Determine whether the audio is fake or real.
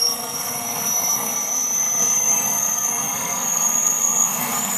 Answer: fake